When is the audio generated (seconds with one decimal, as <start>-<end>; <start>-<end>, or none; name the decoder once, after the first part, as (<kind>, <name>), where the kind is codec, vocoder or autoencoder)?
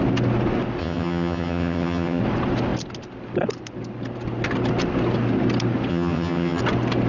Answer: 0.8-2.2 (vocoder, HiFi-GAN); 5.9-6.6